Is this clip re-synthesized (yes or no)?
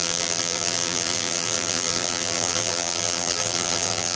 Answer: yes